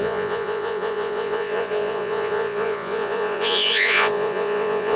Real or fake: fake